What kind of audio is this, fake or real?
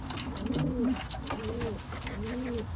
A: real